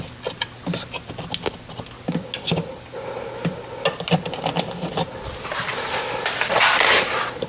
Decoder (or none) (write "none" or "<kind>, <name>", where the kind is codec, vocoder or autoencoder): none